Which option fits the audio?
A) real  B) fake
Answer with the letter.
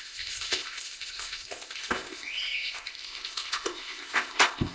B